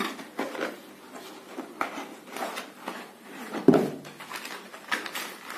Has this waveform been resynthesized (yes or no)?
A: no